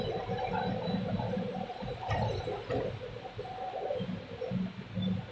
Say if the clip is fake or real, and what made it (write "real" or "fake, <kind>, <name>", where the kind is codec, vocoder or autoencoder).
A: real